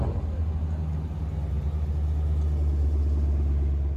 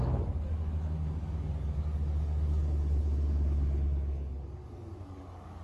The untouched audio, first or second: first